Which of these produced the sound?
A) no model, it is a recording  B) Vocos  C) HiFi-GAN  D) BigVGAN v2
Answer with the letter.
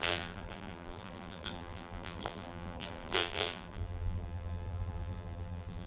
D